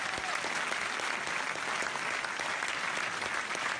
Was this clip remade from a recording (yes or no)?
no